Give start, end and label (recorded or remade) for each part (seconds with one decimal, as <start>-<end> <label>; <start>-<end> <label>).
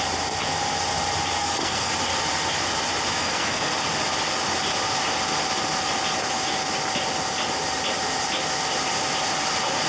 0.0-1.4 recorded; 1.4-1.9 remade; 1.9-3.2 recorded; 3.2-3.7 remade; 3.7-9.9 recorded